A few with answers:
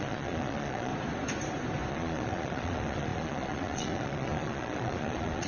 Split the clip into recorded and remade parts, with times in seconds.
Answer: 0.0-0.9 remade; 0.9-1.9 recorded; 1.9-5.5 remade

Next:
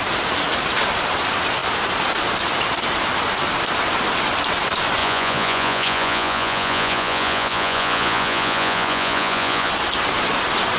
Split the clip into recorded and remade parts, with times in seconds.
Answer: 0.0-5.0 recorded; 5.0-9.7 remade; 9.7-10.8 recorded

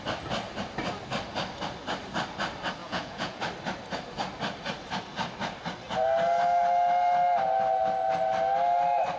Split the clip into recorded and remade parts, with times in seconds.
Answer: 0.0-2.8 recorded; 2.8-3.4 remade; 3.4-9.2 recorded

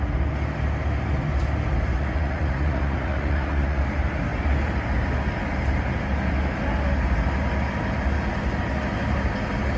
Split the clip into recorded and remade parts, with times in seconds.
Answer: 0.0-1.9 recorded; 1.9-3.8 remade; 3.8-9.8 recorded

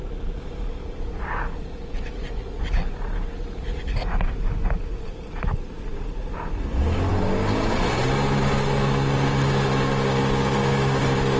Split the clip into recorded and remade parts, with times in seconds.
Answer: 0.0-11.4 recorded

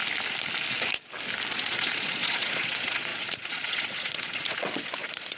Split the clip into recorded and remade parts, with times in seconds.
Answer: 0.0-1.5 recorded; 1.5-5.4 remade